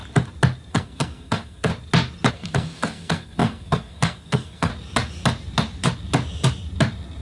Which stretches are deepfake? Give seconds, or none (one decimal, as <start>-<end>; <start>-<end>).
0.7-1.7; 2.3-4.7